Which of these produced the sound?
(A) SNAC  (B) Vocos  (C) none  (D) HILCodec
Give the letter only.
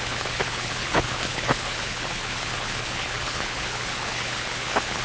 D